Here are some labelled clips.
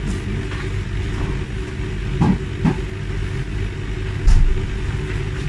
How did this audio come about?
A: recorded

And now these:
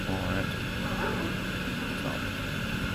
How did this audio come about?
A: recorded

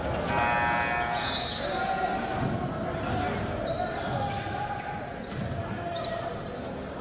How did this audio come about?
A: recorded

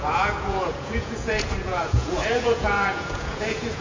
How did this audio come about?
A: remade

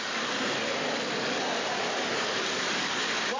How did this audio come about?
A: remade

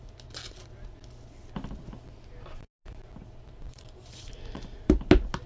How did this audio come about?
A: recorded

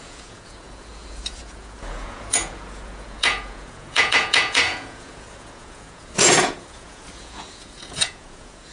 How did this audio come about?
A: remade